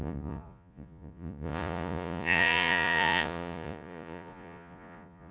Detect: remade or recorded remade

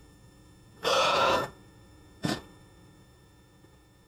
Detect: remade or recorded remade